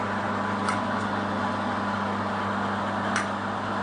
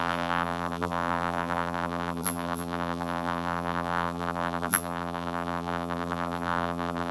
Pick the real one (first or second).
first